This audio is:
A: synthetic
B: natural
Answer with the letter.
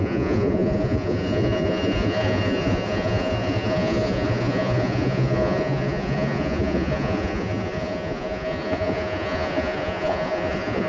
A